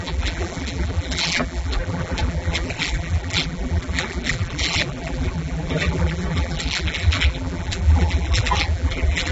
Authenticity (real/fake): fake